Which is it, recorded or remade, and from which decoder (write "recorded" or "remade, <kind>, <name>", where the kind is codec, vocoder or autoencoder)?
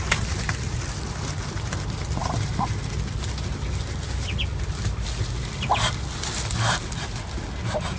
recorded